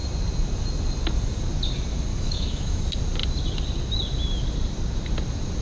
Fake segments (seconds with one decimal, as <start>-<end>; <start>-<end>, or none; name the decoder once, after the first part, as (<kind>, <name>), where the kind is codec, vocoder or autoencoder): 2.1-2.8 (autoencoder, DAC-VAE)